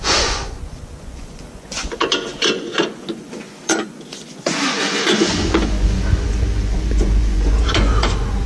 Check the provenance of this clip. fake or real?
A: fake